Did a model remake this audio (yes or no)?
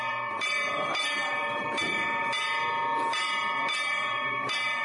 yes